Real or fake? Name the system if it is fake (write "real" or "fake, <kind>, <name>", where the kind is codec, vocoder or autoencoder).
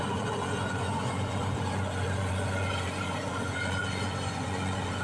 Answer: fake, vocoder, Vocos